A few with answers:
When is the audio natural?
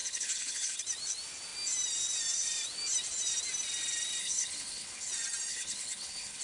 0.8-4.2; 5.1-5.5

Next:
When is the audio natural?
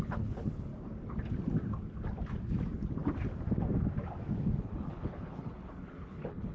0.7-4.6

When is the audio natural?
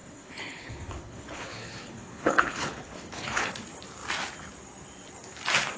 3.5-5.8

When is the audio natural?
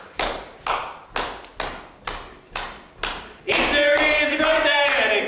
0.0-5.3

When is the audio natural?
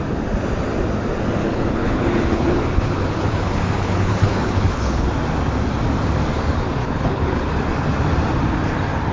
0.0-1.4; 5.1-6.8; 7.6-9.1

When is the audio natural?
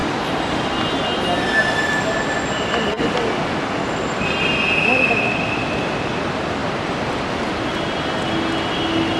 0.0-9.2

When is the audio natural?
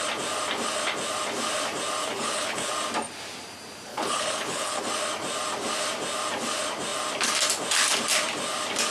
0.0-2.0; 2.7-3.9; 4.8-8.9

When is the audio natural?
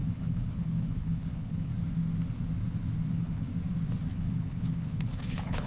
1.7-3.1; 3.5-4.1